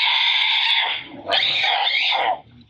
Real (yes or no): yes